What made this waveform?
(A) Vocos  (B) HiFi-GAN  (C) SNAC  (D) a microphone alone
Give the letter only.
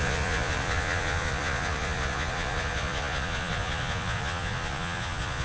A